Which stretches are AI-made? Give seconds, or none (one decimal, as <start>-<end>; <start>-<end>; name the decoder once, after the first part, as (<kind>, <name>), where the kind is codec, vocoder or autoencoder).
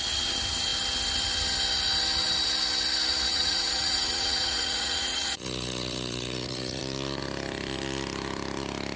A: 3.3-6.8 (vocoder, Vocos)